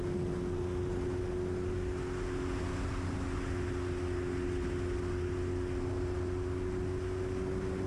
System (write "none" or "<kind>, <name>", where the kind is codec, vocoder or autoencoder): none